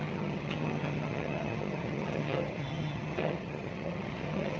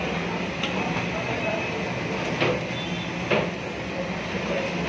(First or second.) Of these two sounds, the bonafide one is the second